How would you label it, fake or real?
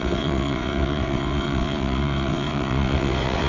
fake